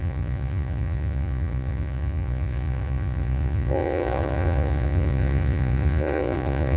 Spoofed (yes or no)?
yes